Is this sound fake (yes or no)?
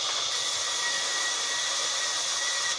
no